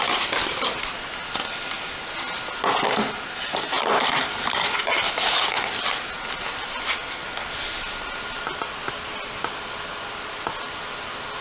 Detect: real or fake real